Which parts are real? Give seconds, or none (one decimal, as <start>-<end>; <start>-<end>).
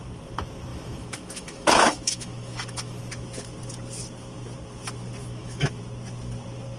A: 0.0-0.7; 3.0-5.2; 5.8-6.8